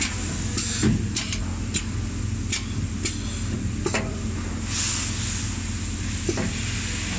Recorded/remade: recorded